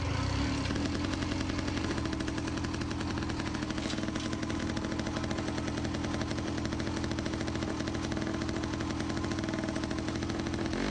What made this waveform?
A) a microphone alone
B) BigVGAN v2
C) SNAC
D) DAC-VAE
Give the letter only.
A